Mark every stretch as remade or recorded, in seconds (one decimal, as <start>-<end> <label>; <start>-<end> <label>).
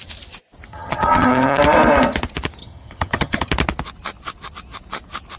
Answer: 0.0-0.7 recorded; 0.7-1.6 remade; 1.6-2.6 recorded; 2.6-3.5 remade; 3.5-5.4 recorded